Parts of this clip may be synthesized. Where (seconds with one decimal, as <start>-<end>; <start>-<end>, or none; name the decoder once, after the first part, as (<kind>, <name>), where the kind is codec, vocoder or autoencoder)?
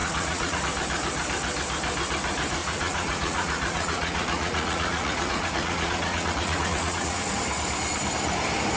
0.0-0.6 (vocoder, Vocos); 2.6-7.3